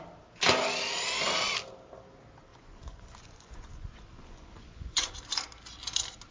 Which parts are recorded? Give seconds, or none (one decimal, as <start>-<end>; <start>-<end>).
0.0-2.5; 5.1-6.3